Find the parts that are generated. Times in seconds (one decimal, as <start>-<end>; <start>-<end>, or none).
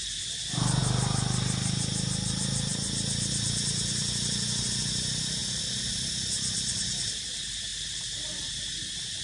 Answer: 7.7-9.2